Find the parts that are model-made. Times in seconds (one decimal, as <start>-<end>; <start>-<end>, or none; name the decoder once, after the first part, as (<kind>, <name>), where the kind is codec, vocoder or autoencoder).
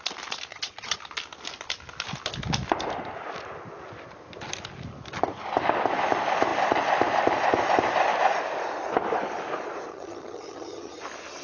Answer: 0.5-1.0 (vocoder, HiFi-GAN); 9.9-11.0